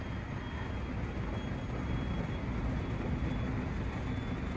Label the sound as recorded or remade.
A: recorded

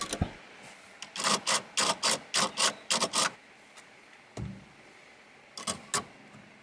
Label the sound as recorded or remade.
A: recorded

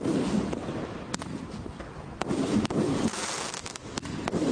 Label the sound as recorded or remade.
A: recorded